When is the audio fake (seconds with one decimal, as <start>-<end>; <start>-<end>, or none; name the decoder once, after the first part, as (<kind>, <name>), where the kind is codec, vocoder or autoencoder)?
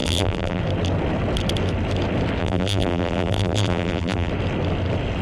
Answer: 0.0-0.6 (vocoder, BigVGAN v2); 2.4-4.3